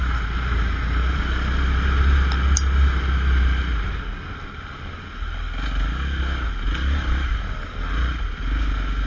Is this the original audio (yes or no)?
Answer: yes